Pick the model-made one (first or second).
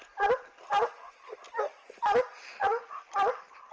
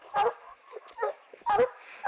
second